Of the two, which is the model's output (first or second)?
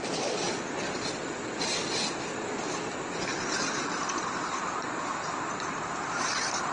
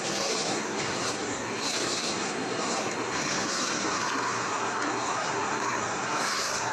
second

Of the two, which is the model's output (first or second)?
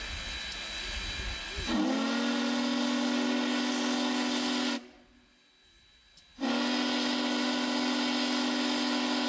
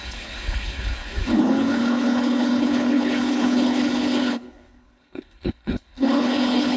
second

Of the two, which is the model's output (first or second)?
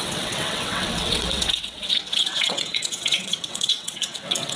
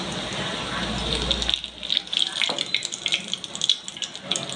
first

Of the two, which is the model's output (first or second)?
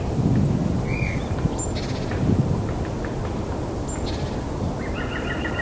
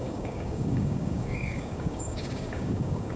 second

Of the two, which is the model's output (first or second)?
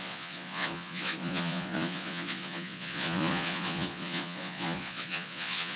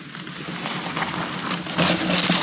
first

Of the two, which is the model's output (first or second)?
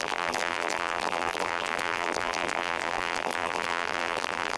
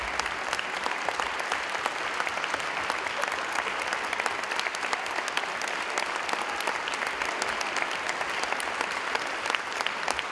first